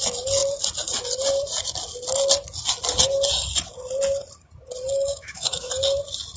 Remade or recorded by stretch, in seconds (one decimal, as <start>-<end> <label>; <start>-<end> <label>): 0.0-5.1 recorded; 5.1-5.7 remade; 5.7-6.4 recorded